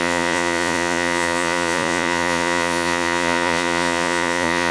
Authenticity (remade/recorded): remade